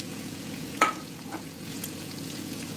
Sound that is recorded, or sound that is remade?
remade